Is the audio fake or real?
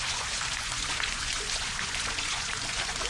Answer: fake